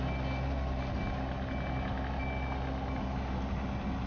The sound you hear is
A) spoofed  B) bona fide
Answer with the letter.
B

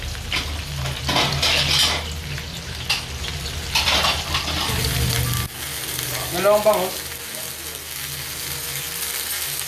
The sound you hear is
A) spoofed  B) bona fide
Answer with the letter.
B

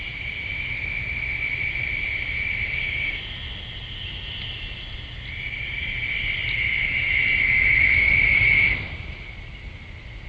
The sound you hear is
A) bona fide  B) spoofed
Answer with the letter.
A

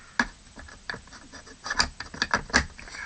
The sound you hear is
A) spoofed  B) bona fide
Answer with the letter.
B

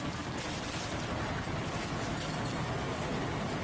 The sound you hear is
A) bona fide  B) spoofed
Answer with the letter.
A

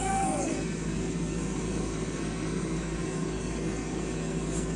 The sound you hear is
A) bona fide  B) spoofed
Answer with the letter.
B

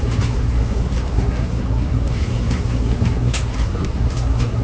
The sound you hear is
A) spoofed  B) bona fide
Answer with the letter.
A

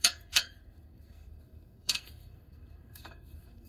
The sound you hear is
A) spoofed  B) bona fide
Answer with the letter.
A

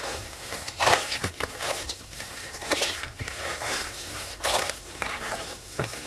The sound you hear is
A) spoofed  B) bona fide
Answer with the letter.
A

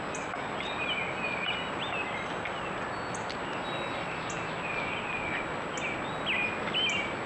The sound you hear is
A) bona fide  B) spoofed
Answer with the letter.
A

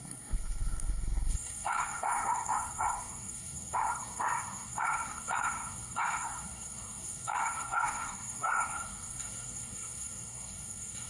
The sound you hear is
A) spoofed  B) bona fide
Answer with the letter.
A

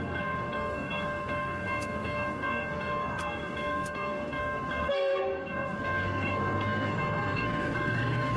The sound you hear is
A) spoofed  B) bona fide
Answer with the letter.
A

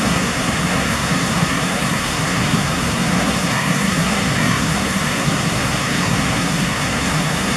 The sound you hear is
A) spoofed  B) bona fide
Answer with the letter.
A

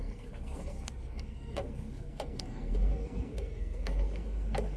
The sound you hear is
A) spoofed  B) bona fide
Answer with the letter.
A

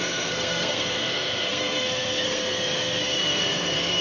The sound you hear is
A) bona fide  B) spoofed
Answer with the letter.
B